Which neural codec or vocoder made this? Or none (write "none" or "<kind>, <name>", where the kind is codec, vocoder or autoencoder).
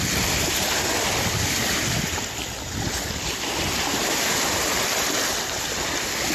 none